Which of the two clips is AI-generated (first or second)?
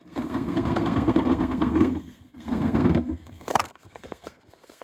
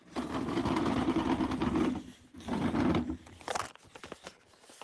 first